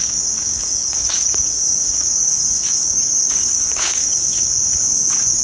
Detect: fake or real fake